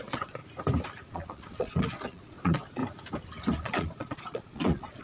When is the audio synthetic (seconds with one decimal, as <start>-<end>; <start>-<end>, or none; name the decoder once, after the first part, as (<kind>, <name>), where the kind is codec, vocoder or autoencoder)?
0.0-0.4 (vocoder, Vocos); 1.1-2.8; 3.5-5.0